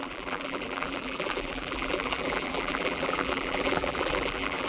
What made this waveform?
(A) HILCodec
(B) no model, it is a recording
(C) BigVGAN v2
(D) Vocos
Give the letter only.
C